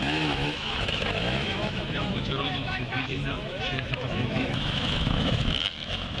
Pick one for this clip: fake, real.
fake